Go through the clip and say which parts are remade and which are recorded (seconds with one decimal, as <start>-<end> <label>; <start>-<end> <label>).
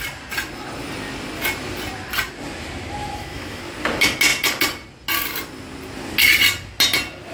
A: 0.0-3.0 recorded; 3.0-3.6 remade; 3.6-7.3 recorded